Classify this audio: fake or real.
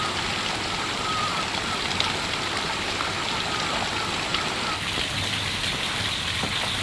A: real